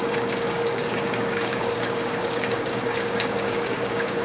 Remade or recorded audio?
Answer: remade